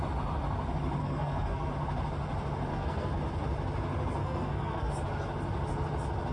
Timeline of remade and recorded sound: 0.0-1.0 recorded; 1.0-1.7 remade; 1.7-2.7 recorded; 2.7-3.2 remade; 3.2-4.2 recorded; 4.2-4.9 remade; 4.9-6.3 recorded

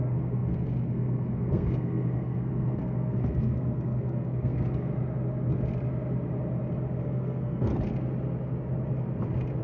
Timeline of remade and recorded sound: 0.0-4.9 remade; 4.9-7.0 recorded; 7.0-7.7 remade; 7.7-9.6 recorded

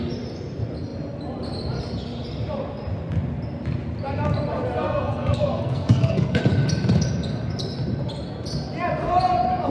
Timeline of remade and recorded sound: 0.0-4.8 recorded; 4.8-6.4 remade; 6.4-9.7 recorded

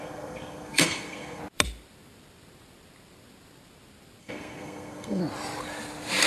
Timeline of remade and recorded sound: 0.0-1.4 remade; 1.4-4.2 recorded; 4.2-5.2 remade; 5.2-6.3 recorded

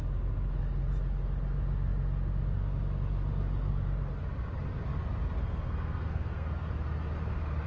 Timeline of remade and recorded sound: 0.0-5.4 recorded; 5.4-6.7 remade; 6.7-7.7 recorded

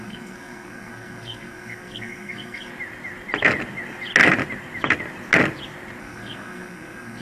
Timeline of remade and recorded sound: 0.0-2.7 remade; 2.7-6.0 recorded; 6.0-7.2 remade

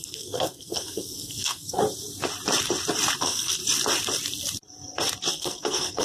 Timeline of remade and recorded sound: 0.0-1.8 remade; 1.8-3.2 recorded; 3.2-3.6 remade; 3.6-5.3 recorded; 5.3-6.0 remade